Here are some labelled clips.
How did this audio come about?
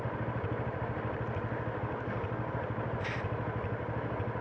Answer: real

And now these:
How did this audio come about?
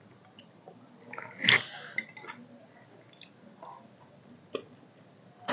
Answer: real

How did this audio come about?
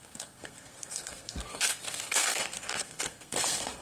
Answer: fake